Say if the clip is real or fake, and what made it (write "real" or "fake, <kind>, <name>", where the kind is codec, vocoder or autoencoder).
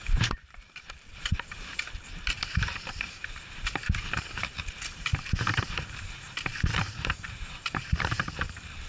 fake, vocoder, BigVGAN v2